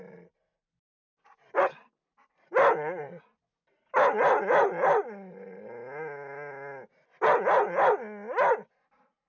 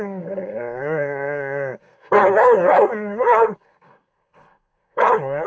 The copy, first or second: second